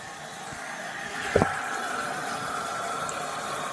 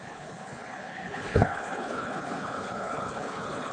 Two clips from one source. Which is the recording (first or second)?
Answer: first